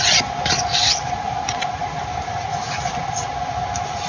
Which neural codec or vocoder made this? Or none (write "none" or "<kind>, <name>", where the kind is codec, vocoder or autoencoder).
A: none